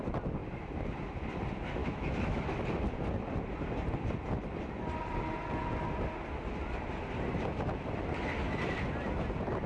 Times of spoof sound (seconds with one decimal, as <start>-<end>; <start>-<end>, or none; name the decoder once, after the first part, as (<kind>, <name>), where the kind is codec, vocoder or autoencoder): 1.8-2.5 (autoencoder, DAC-VAE)